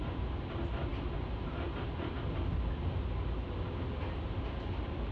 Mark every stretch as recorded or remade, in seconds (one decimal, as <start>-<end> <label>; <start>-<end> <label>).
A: 0.0-5.1 recorded